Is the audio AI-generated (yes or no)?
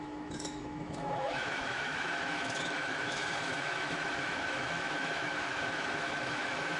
yes